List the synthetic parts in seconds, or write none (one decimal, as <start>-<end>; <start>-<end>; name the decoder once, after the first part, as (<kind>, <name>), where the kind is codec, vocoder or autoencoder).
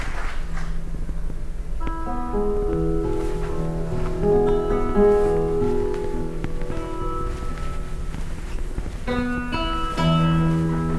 none